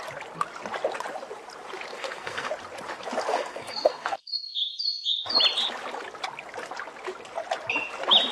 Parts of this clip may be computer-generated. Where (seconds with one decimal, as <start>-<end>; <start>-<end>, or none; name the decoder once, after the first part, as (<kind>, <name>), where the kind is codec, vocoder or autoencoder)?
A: 1.9-2.5 (codec, SNAC); 3.3-4.5